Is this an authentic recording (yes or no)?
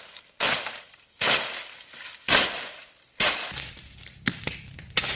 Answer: yes